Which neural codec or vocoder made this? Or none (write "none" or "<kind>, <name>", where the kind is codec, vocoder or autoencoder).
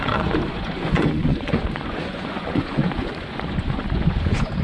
vocoder, Vocos